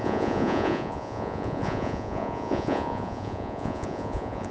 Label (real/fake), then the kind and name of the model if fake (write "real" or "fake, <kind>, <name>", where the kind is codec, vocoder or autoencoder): fake, vocoder, Vocos